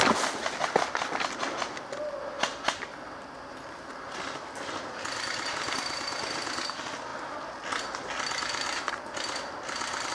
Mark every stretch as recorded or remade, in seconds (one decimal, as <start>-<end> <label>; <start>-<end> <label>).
0.0-10.1 recorded